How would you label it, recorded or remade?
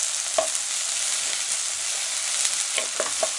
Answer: recorded